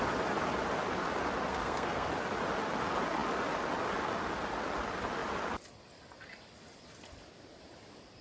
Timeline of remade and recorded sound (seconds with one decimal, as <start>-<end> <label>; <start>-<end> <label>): 0.0-1.5 recorded; 1.5-2.1 remade; 2.1-8.2 recorded